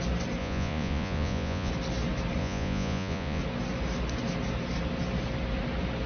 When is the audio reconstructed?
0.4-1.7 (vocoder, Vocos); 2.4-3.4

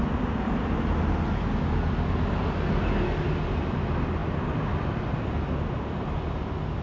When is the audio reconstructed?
none

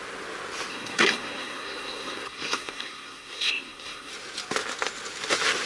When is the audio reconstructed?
0.7-4.1 (codec, SNAC)

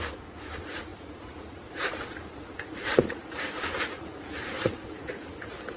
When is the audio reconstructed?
0.0-5.8 (vocoder, Vocos)

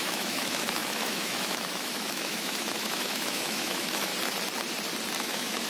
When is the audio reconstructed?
0.0-4.1 (autoencoder, DAC-VAE); 5.2-5.7